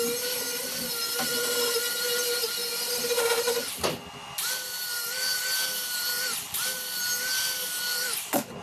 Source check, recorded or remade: recorded